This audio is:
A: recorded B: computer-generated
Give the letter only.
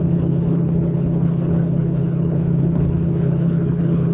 B